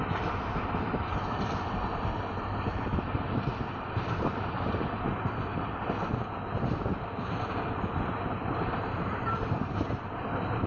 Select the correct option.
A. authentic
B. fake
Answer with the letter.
A